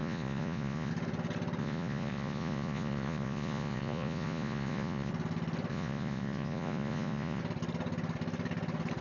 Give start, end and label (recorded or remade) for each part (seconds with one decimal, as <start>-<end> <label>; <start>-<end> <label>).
0.0-0.9 remade; 0.9-1.6 recorded; 1.6-5.1 remade; 5.1-5.7 recorded; 5.7-7.4 remade; 7.4-9.0 recorded